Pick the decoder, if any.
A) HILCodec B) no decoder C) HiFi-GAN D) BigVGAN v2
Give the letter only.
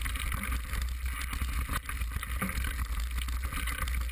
B